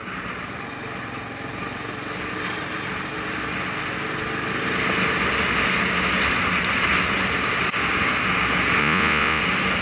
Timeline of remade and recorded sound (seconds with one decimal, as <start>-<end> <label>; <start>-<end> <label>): 0.0-8.8 recorded; 8.8-9.4 remade; 9.4-9.8 recorded